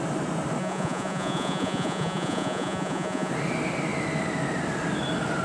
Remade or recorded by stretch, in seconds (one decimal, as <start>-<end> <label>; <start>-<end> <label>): 0.0-0.6 recorded; 0.6-3.3 remade; 3.3-5.4 recorded

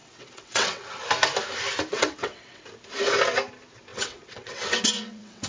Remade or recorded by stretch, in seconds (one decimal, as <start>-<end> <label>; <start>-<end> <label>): 0.0-1.0 remade; 1.0-1.9 recorded; 1.9-2.6 remade; 2.6-3.9 recorded; 3.9-5.5 remade

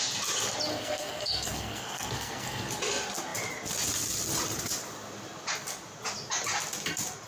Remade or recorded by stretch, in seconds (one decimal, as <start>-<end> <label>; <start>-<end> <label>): 0.0-0.7 recorded; 0.7-2.7 remade; 2.7-7.3 recorded

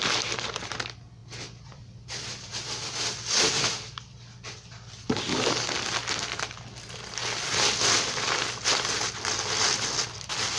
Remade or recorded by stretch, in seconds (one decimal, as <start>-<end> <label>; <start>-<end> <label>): 0.0-10.6 recorded

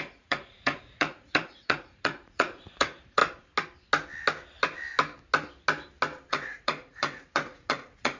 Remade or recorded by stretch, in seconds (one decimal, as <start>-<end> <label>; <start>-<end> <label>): 0.0-3.2 remade; 3.2-6.3 recorded; 6.3-8.2 remade

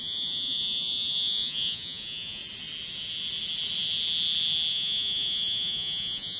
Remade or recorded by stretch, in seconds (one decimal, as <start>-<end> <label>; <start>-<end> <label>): 0.0-2.4 remade; 2.4-4.7 recorded; 4.7-6.4 remade